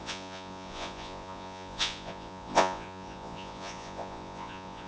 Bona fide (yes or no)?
no